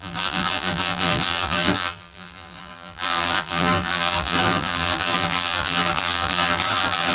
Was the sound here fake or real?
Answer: fake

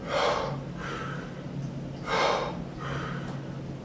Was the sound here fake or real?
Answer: real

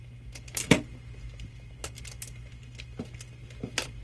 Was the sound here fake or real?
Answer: real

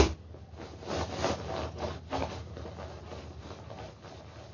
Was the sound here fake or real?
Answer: real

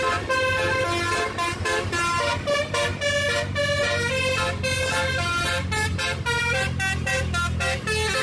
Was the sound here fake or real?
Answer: real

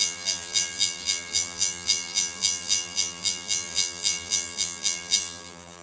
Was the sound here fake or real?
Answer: fake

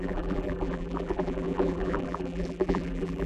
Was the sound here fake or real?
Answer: fake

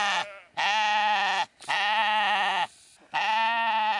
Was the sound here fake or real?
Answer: real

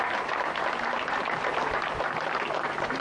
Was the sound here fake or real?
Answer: fake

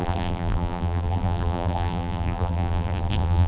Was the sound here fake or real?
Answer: fake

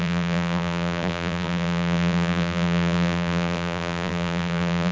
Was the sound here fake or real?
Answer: fake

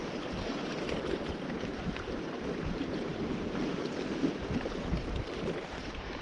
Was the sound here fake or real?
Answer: fake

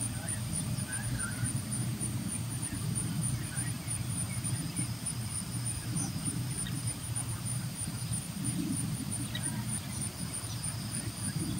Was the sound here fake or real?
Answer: fake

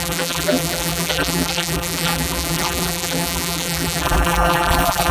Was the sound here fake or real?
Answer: fake